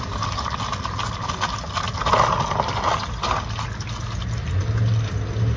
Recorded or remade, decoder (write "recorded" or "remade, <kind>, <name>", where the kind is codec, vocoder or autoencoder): recorded